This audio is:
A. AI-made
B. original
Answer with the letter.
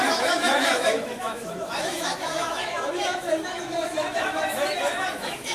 A